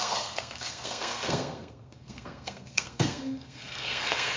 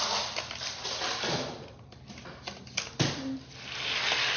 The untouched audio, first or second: second